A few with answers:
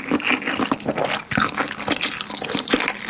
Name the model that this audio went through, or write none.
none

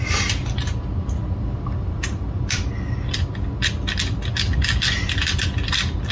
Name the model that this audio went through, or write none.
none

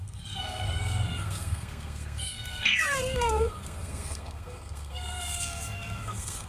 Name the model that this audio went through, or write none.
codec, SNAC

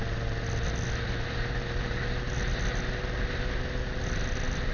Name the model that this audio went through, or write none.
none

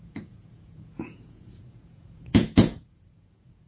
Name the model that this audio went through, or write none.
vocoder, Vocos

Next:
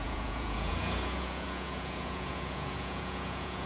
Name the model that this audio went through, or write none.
vocoder, Vocos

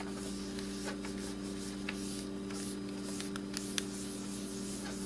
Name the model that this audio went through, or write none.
none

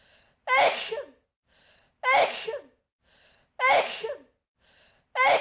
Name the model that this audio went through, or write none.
none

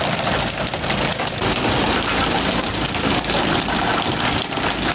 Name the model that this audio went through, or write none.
none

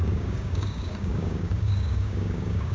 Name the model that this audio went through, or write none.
codec, DAC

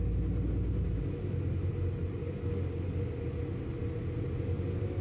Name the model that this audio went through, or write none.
none